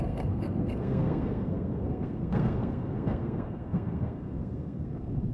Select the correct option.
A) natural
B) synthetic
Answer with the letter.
B